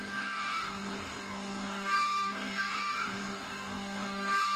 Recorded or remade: remade